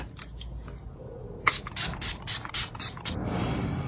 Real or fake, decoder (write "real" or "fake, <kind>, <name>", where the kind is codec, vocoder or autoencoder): real